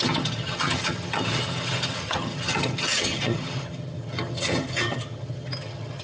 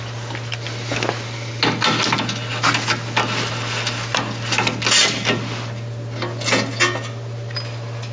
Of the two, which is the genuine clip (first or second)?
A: second